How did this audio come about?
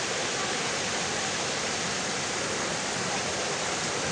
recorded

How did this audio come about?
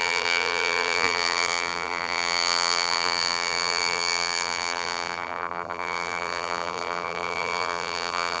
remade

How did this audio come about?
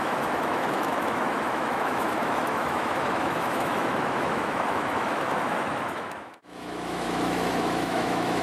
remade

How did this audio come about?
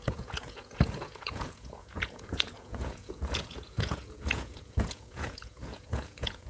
remade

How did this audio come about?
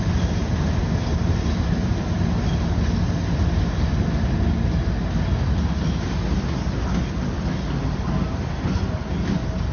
recorded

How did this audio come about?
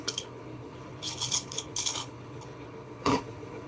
remade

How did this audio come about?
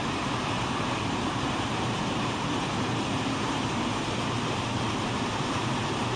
remade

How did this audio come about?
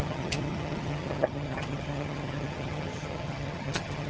remade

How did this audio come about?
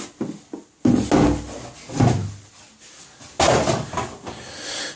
recorded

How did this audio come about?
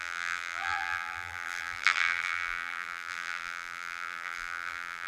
remade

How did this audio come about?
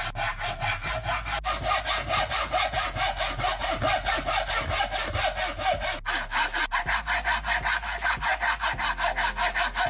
recorded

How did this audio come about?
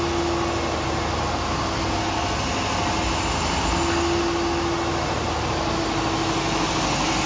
recorded